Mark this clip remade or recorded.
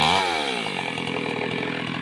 recorded